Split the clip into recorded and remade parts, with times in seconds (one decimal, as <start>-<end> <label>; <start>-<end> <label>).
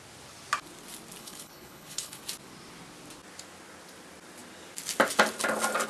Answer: 0.0-1.2 recorded; 1.2-2.2 remade; 2.2-5.9 recorded